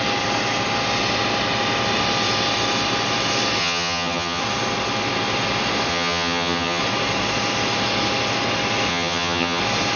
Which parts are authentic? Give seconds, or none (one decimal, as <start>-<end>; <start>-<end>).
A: 0.0-3.6; 4.4-5.9; 6.8-8.9; 9.6-10.0